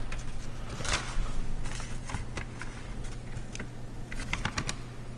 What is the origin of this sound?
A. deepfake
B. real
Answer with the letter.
B